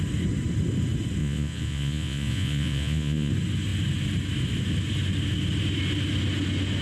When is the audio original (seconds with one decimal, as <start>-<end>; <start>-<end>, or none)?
0.0-1.2; 3.3-6.8

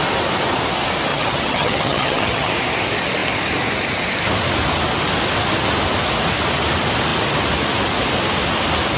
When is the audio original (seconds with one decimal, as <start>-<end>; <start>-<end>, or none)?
0.0-1.1; 2.5-9.0

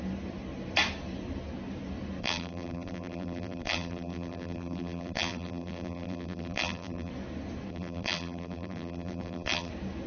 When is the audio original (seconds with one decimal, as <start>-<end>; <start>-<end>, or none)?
0.0-2.2; 7.1-7.7; 9.7-10.1

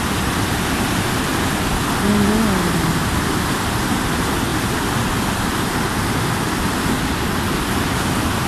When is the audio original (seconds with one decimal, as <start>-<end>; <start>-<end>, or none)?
0.0-8.5